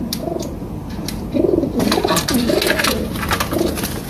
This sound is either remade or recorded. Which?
recorded